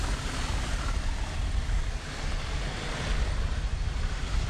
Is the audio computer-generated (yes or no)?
no